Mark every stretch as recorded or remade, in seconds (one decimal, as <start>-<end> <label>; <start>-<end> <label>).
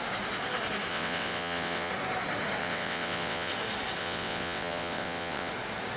0.0-0.9 recorded; 0.9-1.9 remade; 1.9-2.6 recorded; 2.6-3.5 remade; 3.5-4.0 recorded; 4.0-5.5 remade; 5.5-6.0 recorded